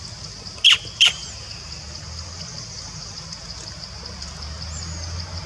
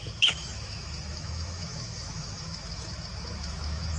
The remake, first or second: second